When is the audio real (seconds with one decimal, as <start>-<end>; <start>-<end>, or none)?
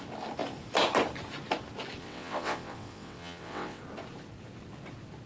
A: 0.0-2.0; 3.8-5.3